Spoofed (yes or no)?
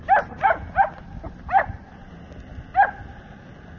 no